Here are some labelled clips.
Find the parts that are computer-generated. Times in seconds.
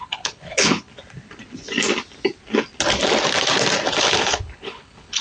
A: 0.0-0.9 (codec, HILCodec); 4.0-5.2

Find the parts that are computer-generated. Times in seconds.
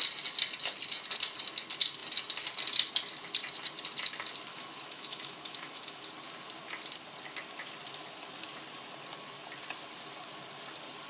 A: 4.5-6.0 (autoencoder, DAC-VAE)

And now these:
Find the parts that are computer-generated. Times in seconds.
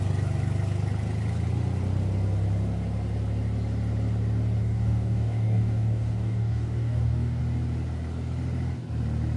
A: 4.6-7.4 (codec, DAC)